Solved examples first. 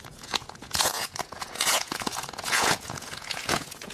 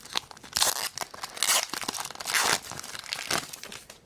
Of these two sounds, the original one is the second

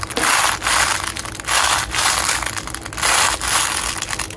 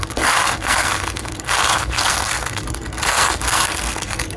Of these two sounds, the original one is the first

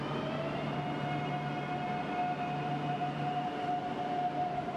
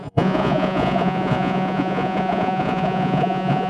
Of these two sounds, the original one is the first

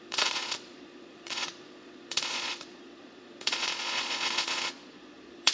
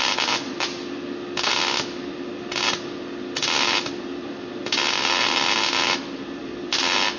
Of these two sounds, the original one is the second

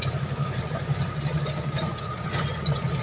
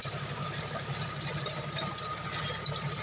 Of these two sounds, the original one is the second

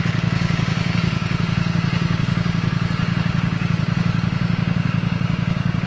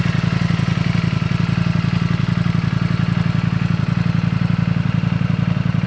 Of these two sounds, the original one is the second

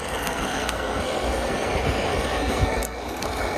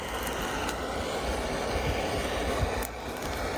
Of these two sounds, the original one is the second